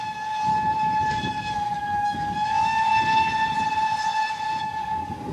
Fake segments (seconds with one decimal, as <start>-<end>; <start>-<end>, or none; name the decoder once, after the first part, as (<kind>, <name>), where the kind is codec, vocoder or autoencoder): 0.0-0.5 (codec, DAC); 1.1-2.9; 4.6-5.3